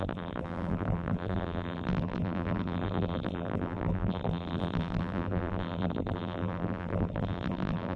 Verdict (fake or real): fake